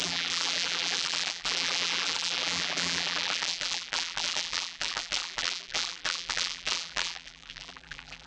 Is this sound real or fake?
fake